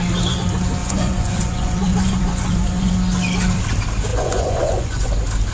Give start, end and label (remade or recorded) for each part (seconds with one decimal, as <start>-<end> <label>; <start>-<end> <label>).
0.0-0.8 recorded; 0.8-2.9 remade; 2.9-4.1 recorded; 4.1-5.1 remade; 5.1-5.5 recorded